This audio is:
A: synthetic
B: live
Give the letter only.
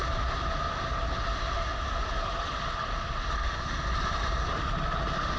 B